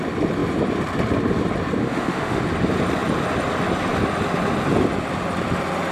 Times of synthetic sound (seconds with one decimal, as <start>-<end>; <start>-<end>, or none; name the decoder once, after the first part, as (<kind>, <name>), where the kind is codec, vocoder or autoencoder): 1.8-2.4 (autoencoder, DAC-VAE)